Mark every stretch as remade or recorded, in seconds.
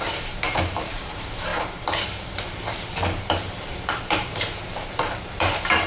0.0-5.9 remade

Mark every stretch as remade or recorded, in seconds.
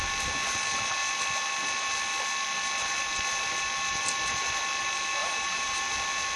0.0-5.2 recorded; 5.2-5.8 remade; 5.8-6.4 recorded